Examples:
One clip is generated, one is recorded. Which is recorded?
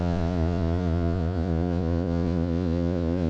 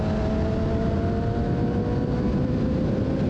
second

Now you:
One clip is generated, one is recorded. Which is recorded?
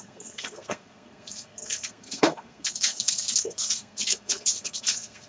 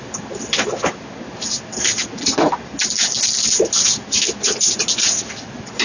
second